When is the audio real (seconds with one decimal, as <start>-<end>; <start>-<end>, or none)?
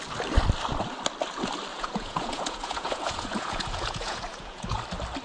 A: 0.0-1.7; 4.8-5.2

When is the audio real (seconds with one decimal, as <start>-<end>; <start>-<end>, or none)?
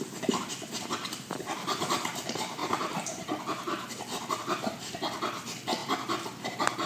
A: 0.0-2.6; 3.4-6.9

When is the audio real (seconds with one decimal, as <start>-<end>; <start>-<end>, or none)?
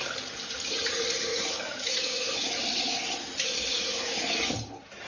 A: 0.0-1.3; 2.6-3.7; 4.4-5.1